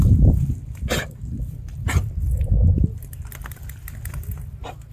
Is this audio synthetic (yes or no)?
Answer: no